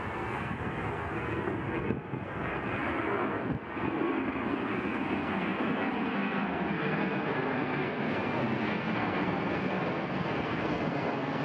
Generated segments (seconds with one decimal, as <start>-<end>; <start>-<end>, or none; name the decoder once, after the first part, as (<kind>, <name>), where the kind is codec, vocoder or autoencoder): 0.0-11.4 (codec, SNAC)